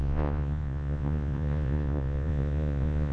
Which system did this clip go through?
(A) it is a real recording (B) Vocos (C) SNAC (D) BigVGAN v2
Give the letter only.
B